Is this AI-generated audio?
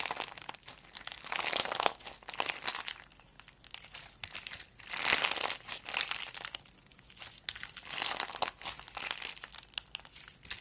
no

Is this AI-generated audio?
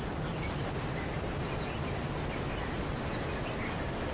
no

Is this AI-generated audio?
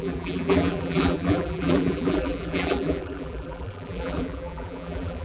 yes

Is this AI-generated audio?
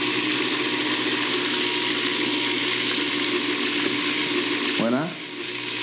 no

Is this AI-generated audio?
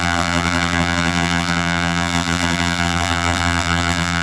yes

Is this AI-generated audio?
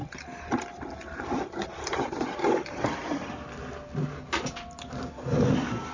no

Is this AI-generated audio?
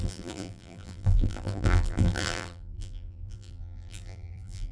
yes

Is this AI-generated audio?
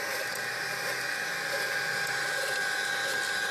no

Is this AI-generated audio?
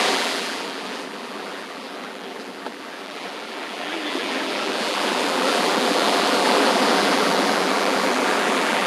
yes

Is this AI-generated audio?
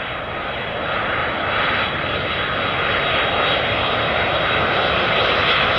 no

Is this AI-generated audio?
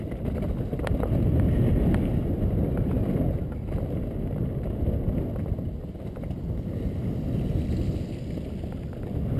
no